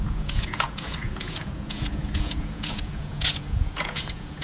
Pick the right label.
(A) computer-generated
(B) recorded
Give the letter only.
A